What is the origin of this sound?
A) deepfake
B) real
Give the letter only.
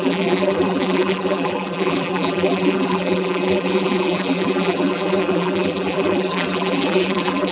A